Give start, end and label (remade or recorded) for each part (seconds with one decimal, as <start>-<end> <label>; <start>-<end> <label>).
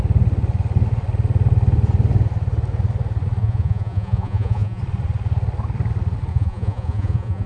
0.0-3.4 recorded; 3.4-4.8 remade; 4.8-6.3 recorded; 6.3-7.5 remade